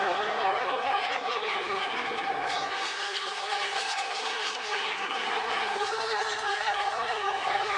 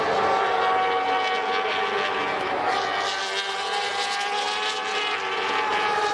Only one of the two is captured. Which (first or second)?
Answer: second